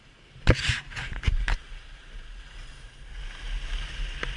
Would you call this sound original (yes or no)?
yes